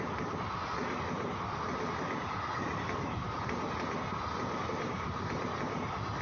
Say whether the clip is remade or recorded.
recorded